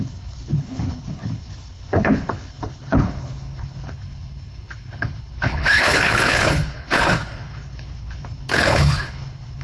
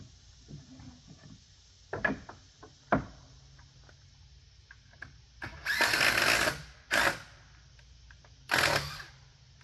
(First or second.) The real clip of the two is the second